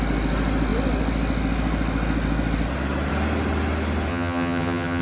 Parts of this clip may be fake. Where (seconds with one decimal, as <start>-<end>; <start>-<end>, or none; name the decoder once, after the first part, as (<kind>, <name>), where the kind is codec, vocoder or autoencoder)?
4.1-5.0 (vocoder, HiFi-GAN)